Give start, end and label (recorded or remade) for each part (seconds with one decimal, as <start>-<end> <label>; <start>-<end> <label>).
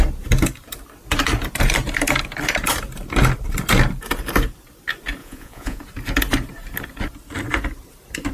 0.0-5.2 recorded; 5.2-5.8 remade; 5.8-8.3 recorded